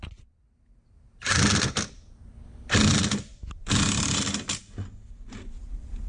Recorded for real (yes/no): yes